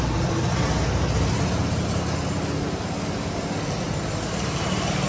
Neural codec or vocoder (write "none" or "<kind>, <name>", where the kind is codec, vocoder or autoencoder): none